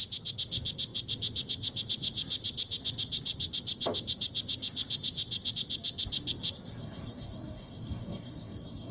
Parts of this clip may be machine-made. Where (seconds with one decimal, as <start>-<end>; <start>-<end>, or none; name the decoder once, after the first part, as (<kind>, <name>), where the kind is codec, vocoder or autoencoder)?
6.8-8.9 (codec, DAC)